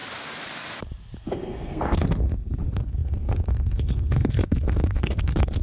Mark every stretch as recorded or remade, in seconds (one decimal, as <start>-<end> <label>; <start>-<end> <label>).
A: 0.0-1.2 recorded; 1.2-5.6 remade